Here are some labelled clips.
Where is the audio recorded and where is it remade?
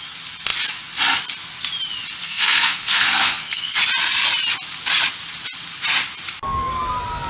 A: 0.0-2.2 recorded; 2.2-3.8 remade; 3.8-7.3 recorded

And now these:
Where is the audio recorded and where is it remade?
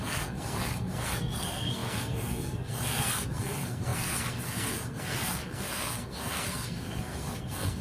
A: 0.0-7.8 remade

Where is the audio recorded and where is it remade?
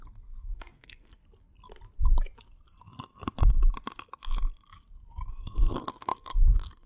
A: 0.0-1.2 remade; 1.2-5.3 recorded; 5.3-6.9 remade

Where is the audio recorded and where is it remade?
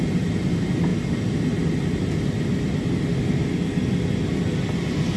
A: 0.0-5.2 recorded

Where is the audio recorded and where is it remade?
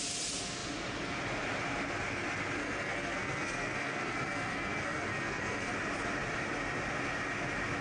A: 0.0-2.6 recorded; 2.6-5.7 remade; 5.7-7.8 recorded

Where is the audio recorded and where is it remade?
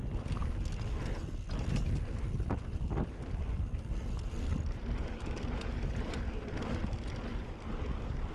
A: 0.0-8.3 recorded